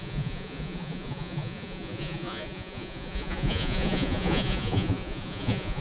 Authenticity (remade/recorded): remade